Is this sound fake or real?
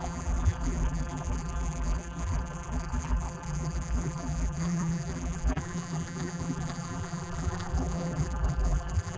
fake